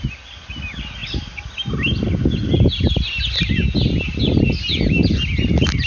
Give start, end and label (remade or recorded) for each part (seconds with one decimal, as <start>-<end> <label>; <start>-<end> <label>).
0.0-5.9 recorded